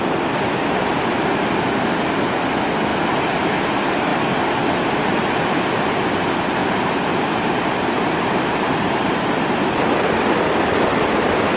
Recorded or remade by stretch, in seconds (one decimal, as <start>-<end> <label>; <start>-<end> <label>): 0.0-6.6 recorded; 6.6-10.0 remade; 10.0-11.6 recorded